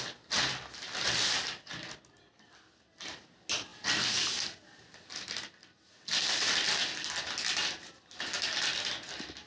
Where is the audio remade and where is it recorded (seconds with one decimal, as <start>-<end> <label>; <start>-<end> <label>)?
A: 0.0-9.5 recorded